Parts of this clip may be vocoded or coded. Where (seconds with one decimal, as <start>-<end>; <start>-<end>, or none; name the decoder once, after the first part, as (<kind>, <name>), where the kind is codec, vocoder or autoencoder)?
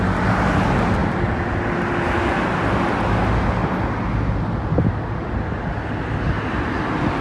none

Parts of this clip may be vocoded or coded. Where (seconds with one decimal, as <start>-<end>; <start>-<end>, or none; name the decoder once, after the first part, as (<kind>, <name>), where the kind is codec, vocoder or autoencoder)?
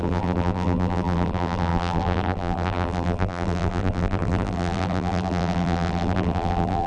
0.0-6.9 (vocoder, BigVGAN v2)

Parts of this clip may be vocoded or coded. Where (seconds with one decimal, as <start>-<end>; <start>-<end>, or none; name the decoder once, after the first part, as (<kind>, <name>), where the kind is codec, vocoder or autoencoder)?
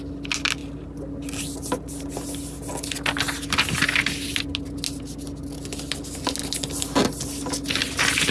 none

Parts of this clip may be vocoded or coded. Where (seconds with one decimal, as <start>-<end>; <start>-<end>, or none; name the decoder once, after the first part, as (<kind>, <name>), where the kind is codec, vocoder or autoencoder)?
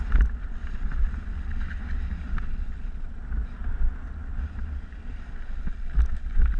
3.6-5.5 (vocoder, BigVGAN v2)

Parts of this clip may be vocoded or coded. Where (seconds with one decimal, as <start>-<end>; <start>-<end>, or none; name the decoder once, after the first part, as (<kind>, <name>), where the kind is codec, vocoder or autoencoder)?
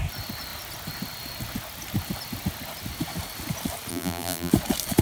3.9-4.5 (vocoder, BigVGAN v2)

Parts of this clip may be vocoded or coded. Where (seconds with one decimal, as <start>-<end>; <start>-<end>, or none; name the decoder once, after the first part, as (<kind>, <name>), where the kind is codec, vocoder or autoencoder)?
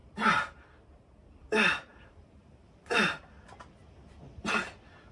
0.0-0.6 (vocoder, BigVGAN v2); 1.9-3.2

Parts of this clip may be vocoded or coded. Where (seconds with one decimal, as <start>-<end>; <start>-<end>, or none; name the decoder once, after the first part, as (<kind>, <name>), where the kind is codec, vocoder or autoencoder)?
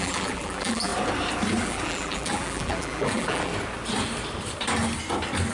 0.0-0.9 (vocoder, BigVGAN v2); 1.6-3.5